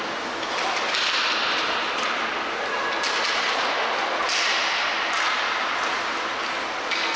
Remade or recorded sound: recorded